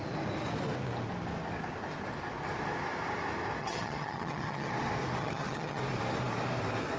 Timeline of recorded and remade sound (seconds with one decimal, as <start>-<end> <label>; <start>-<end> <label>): 0.0-3.6 recorded; 3.6-4.7 remade; 4.7-5.2 recorded; 5.2-5.8 remade; 5.8-7.0 recorded